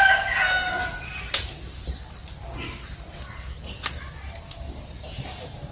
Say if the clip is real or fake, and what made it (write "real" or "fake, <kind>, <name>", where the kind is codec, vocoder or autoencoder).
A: real